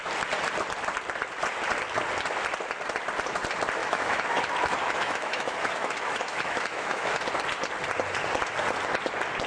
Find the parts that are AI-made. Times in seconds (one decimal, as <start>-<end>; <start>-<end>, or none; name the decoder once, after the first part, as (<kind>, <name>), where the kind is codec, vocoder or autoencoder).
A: 3.8-7.2 (autoencoder, DAC-VAE)